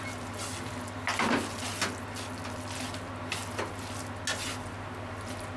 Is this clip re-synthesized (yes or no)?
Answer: no